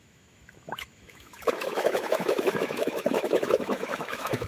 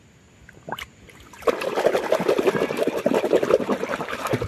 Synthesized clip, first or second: first